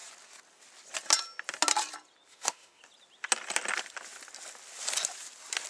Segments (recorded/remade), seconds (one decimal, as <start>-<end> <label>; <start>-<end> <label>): 0.0-2.3 recorded; 2.3-2.8 remade; 2.8-5.7 recorded